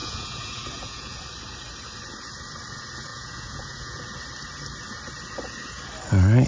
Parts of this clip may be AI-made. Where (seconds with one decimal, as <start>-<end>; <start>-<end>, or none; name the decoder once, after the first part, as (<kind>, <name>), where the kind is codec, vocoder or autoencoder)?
0.0-1.2 (vocoder, Vocos); 3.1-4.0